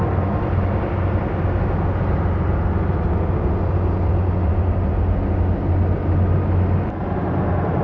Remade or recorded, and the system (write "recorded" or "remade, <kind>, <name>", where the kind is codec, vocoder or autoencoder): recorded